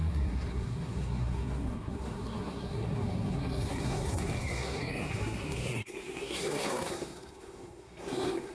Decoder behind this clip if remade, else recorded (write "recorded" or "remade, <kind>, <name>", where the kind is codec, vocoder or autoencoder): remade, codec, SNAC